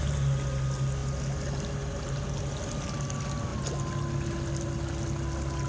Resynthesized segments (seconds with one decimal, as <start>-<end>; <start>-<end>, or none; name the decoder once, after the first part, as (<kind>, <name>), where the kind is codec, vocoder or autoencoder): none